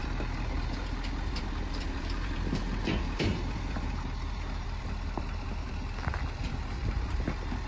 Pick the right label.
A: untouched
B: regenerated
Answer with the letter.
B